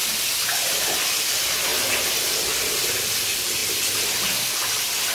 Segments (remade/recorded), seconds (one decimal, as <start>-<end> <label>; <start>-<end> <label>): 0.0-5.1 recorded

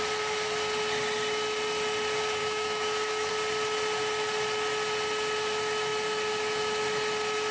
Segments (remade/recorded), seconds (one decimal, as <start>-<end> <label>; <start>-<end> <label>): 0.0-2.4 recorded; 2.4-3.3 remade; 3.3-7.5 recorded

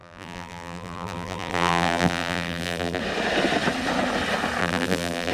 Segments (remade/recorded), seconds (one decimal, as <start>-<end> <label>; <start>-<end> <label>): 0.0-3.0 remade; 3.0-4.6 recorded; 4.6-5.3 remade

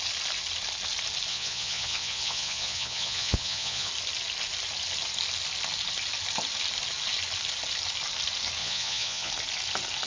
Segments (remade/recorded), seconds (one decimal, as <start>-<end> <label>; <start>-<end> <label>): 0.0-1.3 recorded; 1.3-3.9 remade; 3.9-8.6 recorded; 8.6-9.3 remade; 9.3-10.1 recorded

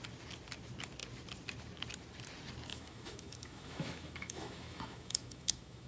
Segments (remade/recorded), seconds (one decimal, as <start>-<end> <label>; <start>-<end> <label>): 0.0-2.7 recorded; 2.7-5.9 remade

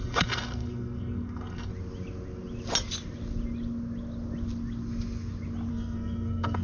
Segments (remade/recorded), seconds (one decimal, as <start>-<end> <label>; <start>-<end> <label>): 0.0-1.7 remade; 1.7-5.7 recorded; 5.7-6.6 remade

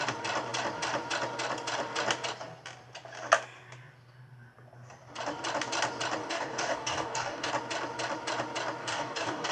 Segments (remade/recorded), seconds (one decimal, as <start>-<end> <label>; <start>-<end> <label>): 0.0-6.2 recorded; 6.2-7.5 remade; 7.5-8.8 recorded; 8.8-9.5 remade